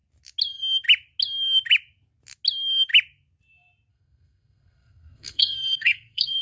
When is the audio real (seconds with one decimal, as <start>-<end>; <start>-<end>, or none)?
0.0-3.9